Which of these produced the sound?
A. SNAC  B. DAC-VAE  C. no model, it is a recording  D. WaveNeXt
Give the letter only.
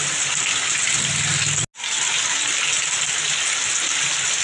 C